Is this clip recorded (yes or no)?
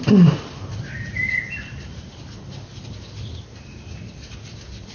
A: yes